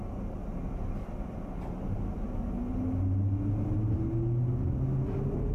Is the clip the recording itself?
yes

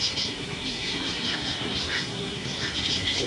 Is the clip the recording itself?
no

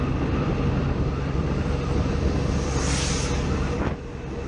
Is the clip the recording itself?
yes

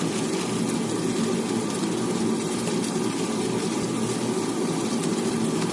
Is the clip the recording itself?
yes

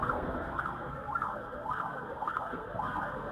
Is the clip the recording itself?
no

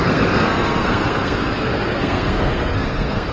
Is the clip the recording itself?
no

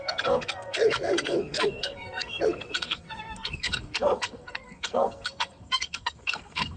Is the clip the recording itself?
no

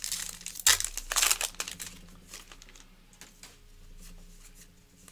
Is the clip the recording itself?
yes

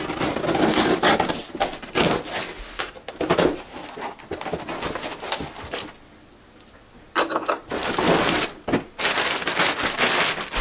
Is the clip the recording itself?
yes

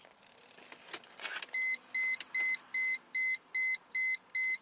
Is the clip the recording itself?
yes